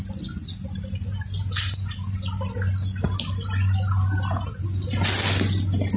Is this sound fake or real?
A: real